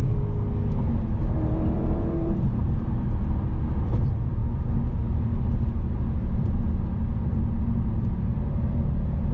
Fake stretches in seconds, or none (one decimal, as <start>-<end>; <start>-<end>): 1.2-2.9